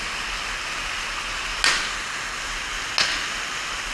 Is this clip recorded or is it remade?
recorded